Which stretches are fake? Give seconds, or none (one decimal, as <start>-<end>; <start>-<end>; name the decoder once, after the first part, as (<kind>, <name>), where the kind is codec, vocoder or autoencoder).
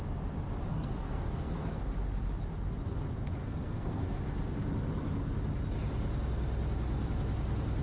0.7-1.8 (codec, SNAC); 3.4-4.2